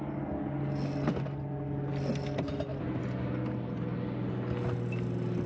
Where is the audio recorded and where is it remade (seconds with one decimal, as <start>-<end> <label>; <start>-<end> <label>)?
0.0-5.5 recorded